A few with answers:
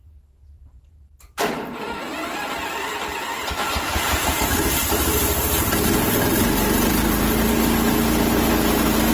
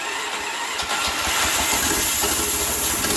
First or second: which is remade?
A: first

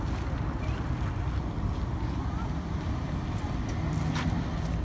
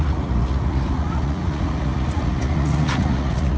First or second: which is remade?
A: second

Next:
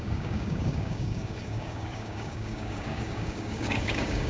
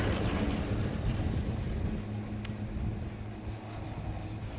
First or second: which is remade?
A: first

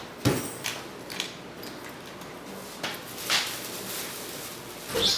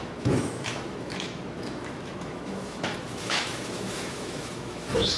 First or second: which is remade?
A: second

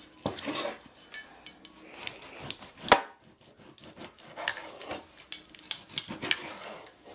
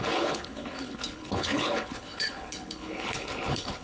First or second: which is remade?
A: second